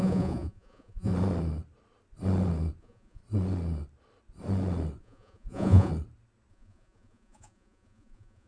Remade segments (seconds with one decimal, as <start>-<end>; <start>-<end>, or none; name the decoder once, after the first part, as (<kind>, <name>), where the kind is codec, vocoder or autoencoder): 0.0-1.1 (vocoder, Vocos); 2.8-3.2; 5.0-5.9; 6.5-8.5